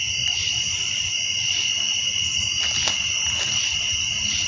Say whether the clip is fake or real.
real